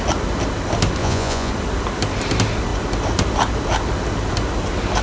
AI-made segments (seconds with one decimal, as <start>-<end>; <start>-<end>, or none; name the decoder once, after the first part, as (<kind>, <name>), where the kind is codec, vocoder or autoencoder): 1.0-1.5 (vocoder, Vocos)